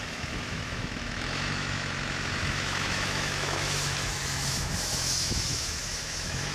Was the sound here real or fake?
fake